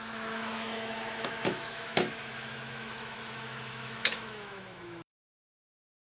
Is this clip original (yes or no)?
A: no